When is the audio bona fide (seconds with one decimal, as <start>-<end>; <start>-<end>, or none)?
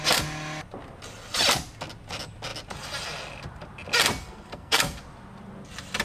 0.0-4.2; 5.0-6.0